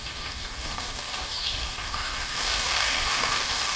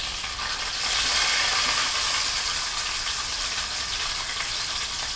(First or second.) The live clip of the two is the second